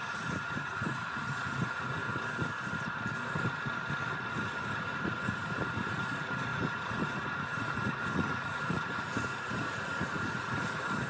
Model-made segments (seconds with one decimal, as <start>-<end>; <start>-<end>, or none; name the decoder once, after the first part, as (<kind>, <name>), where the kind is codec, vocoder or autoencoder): 0.0-2.0 (vocoder, Vocos); 4.3-11.1